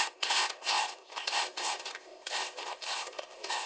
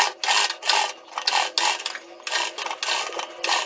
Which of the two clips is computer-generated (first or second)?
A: first